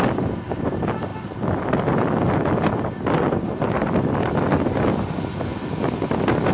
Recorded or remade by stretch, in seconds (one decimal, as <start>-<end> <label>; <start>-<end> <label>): 0.0-6.5 recorded